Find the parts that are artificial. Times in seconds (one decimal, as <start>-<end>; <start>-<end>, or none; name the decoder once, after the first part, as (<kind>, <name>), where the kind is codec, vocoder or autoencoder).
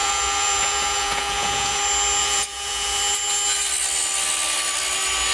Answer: 0.0-1.8 (vocoder, Vocos); 2.2-3.0